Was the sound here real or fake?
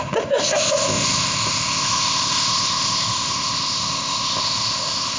fake